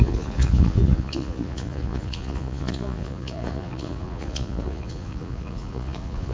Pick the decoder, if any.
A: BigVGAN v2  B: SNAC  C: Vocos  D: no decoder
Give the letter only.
C